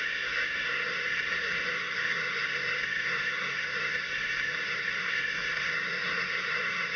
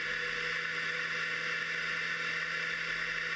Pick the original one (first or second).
second